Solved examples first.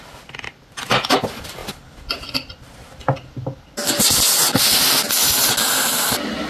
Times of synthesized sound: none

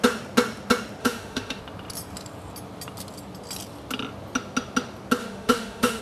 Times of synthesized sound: 1.0-1.6 (autoencoder, DAC-VAE); 5.2-6.0

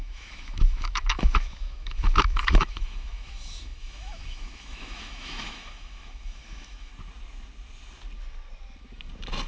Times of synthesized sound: 0.0-6.9 (autoencoder, DAC-VAE)